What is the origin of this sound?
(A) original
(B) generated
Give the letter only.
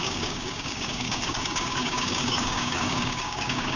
B